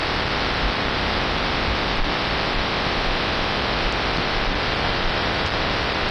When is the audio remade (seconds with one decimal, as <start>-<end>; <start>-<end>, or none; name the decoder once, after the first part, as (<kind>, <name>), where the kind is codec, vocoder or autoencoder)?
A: 0.0-2.7 (vocoder, BigVGAN v2); 3.5-6.1